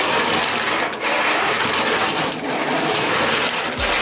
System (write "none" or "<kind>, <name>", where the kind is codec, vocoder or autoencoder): none